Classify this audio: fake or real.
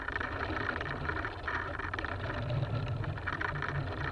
real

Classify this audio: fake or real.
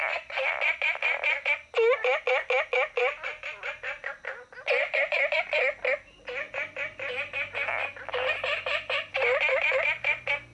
real